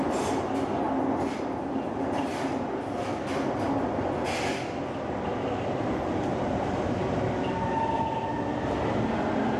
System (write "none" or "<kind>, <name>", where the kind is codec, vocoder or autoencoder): none